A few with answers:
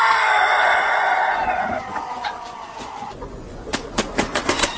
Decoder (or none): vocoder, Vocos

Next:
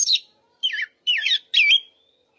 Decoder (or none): vocoder, BigVGAN v2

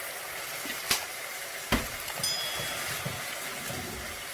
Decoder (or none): none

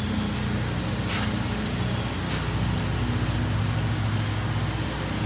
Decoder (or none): none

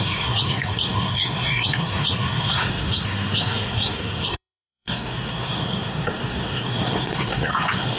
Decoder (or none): codec, SNAC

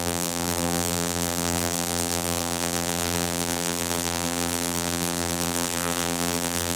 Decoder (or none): vocoder, BigVGAN v2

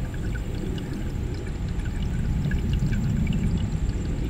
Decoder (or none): none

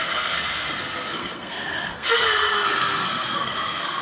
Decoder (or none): codec, SNAC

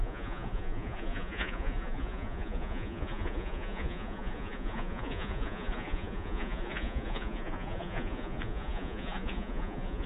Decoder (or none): vocoder, Vocos